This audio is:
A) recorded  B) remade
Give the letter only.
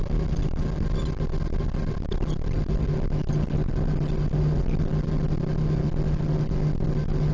A